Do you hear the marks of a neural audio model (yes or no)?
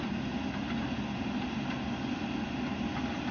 no